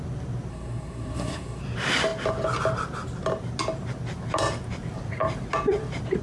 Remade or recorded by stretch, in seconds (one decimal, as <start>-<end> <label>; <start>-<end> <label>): 0.0-0.5 recorded; 0.5-1.6 remade; 1.6-6.2 recorded